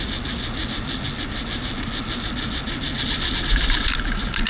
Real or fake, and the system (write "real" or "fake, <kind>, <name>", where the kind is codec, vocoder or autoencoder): real